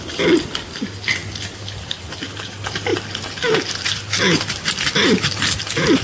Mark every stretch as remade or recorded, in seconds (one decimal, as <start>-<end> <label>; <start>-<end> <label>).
0.0-6.0 recorded